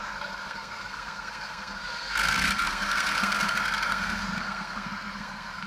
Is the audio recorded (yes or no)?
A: no